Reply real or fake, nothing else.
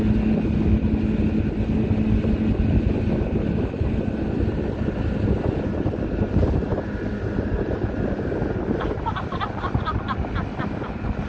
real